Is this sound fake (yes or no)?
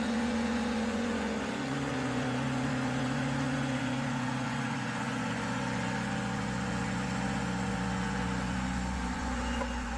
yes